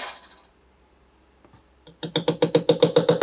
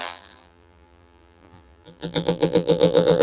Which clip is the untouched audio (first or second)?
first